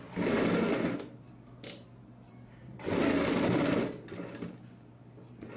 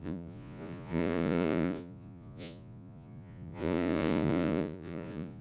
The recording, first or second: first